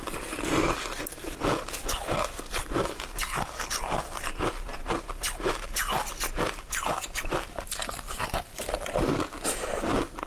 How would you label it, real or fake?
fake